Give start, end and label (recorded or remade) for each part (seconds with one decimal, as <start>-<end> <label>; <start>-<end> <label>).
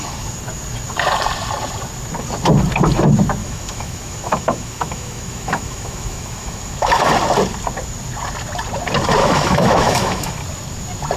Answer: 0.0-3.4 recorded; 3.4-7.1 remade; 7.1-9.2 recorded; 9.2-10.3 remade; 10.3-11.2 recorded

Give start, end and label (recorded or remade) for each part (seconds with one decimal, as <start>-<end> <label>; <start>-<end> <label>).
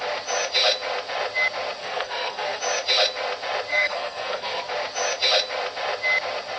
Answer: 0.0-1.8 recorded; 1.8-2.6 remade; 2.6-3.7 recorded; 3.7-4.6 remade; 4.6-6.6 recorded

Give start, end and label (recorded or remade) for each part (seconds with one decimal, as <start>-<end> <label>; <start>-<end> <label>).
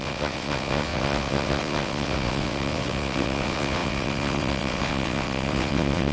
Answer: 0.0-6.1 remade